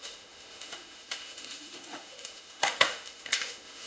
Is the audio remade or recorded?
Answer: remade